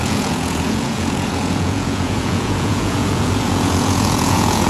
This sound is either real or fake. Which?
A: fake